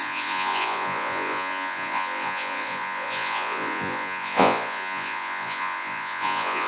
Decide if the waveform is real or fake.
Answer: fake